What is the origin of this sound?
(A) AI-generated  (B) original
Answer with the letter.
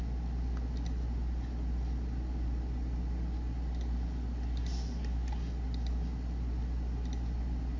B